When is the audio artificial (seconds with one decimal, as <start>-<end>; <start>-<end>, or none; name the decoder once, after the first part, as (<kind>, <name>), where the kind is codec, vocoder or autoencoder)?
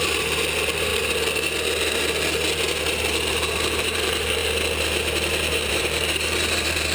0.0-0.9 (vocoder, BigVGAN v2); 3.3-4.4; 5.7-6.9